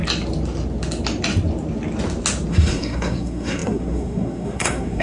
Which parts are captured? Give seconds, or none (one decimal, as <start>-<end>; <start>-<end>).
0.0-2.5